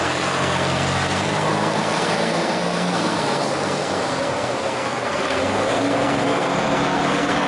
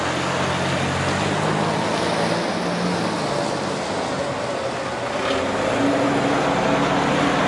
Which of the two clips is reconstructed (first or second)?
first